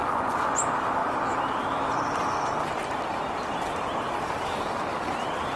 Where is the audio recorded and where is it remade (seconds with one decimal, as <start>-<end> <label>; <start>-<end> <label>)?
0.0-0.6 remade; 0.6-5.6 recorded